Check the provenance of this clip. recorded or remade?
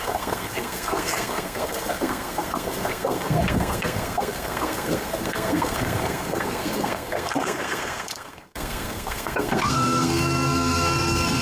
remade